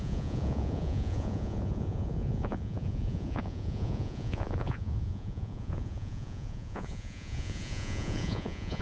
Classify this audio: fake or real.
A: fake